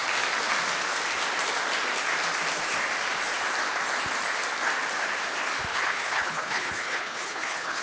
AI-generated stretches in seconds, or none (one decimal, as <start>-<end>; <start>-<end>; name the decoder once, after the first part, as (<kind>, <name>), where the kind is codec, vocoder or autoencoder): 5.7-7.8 (codec, HILCodec)